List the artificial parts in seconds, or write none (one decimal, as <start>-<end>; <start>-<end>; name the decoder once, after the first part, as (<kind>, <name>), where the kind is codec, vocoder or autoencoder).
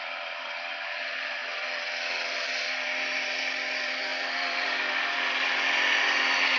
0.0-1.4 (vocoder, BigVGAN v2); 3.4-6.6